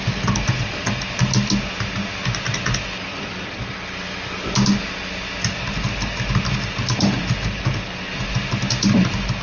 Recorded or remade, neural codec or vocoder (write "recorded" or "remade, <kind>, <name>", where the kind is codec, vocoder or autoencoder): recorded